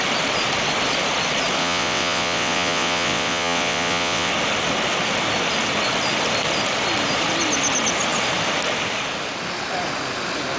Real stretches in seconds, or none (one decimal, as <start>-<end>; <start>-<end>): 0.0-1.6; 4.3-10.6